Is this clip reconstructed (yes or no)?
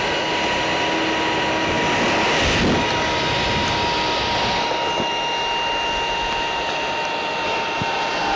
no